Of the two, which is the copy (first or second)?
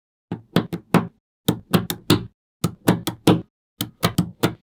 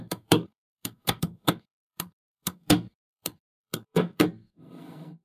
second